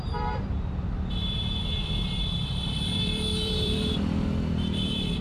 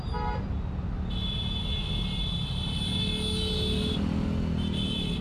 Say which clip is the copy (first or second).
first